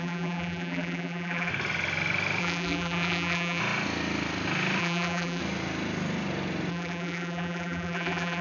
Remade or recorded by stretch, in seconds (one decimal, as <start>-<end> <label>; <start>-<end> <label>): 0.0-1.5 remade; 1.5-2.4 recorded; 2.4-3.6 remade; 3.6-4.8 recorded; 4.8-5.4 remade; 5.4-6.7 recorded; 6.7-8.4 remade